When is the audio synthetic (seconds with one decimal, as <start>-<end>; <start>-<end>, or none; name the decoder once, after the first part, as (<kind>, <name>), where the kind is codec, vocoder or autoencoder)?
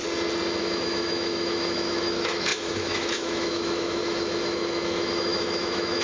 0.6-6.0 (autoencoder, DAC-VAE)